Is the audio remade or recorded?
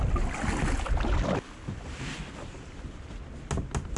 recorded